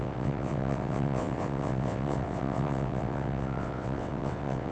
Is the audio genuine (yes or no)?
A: no